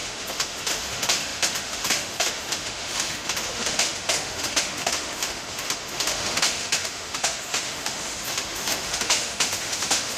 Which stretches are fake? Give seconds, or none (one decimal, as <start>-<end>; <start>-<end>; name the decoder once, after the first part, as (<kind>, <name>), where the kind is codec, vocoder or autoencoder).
0.0-10.2 (autoencoder, DAC-VAE)